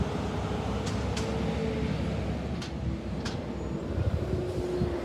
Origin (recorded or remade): recorded